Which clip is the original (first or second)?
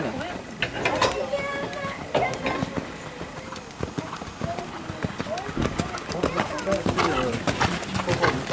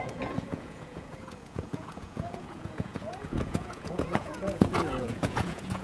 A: first